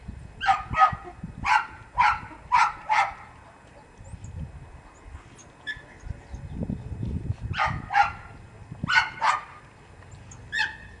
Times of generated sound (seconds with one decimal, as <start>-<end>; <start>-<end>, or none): none

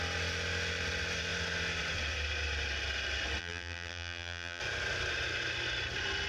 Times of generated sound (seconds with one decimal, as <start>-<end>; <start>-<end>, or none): 3.4-4.6